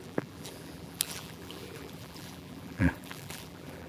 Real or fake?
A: fake